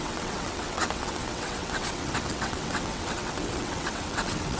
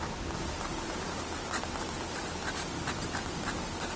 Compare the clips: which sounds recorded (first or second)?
second